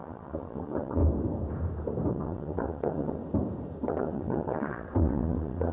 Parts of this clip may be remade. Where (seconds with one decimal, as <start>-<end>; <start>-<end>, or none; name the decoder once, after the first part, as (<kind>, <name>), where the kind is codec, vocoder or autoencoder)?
0.0-1.0 (vocoder, WaveNeXt); 2.1-3.2; 3.9-5.7